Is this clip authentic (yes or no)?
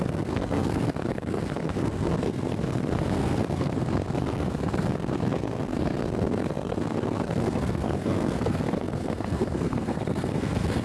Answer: no